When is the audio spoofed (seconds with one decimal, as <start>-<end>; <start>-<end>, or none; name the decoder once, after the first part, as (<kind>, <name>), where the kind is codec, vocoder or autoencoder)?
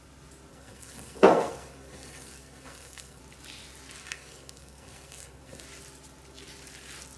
0.5-3.2 (codec, SNAC); 4.0-5.6